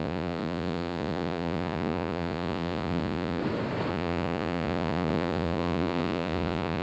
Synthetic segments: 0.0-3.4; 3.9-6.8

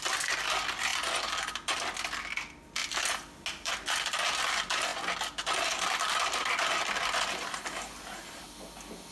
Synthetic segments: none

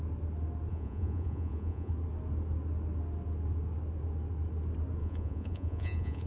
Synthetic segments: 0.7-1.9; 5.0-6.3

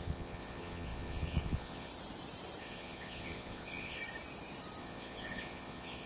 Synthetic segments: 0.0-1.9; 2.6-4.0; 4.8-6.1

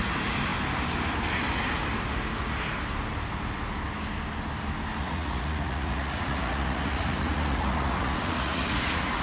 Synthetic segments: 5.0-9.2